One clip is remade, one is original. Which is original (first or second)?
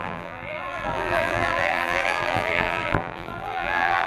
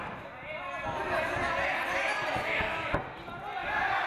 second